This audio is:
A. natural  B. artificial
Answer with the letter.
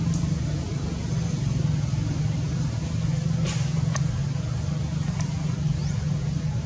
A